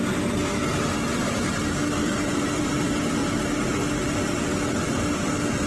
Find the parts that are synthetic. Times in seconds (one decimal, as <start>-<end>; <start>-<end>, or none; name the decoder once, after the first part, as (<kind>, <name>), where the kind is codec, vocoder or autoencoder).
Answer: 2.0-2.6 (vocoder, BigVGAN v2); 3.2-3.8